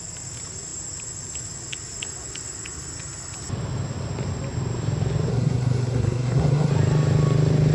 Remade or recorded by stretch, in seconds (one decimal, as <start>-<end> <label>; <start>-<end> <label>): 0.0-5.3 recorded; 5.3-6.7 remade; 6.7-7.7 recorded